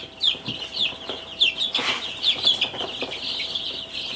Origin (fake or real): fake